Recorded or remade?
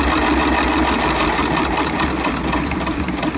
recorded